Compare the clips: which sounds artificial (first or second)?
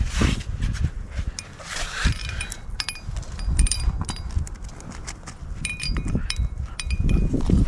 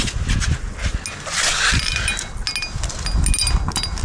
first